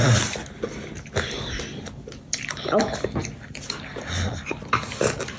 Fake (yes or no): no